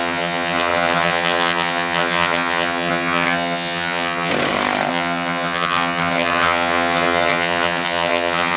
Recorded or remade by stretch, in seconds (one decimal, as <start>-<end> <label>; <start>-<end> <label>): 0.0-4.3 remade; 4.3-4.9 recorded; 4.9-8.6 remade